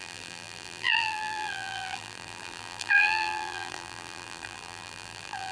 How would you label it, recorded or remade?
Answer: remade